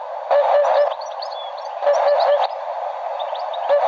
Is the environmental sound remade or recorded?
recorded